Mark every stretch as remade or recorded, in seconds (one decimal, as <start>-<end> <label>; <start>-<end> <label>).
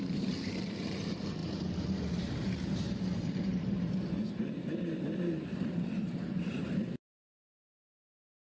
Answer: 0.0-8.4 remade